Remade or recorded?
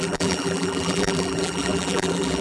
remade